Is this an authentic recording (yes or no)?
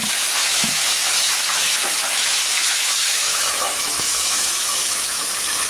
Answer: no